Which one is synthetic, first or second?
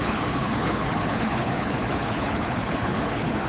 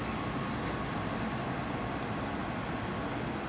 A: first